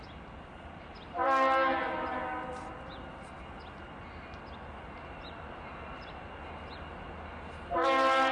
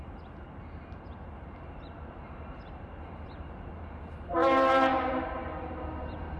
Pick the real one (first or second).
first